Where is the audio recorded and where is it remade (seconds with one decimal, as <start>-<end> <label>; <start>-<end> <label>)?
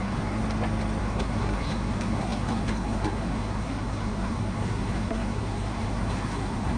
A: 0.0-0.4 remade; 0.4-1.0 recorded; 1.0-6.8 remade